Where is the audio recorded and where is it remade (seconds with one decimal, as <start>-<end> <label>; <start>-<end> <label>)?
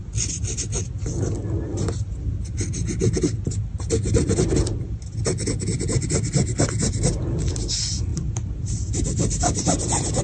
0.0-8.1 recorded; 8.1-10.2 remade